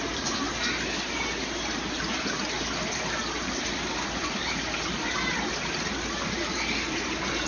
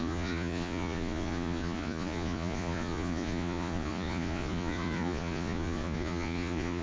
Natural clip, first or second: first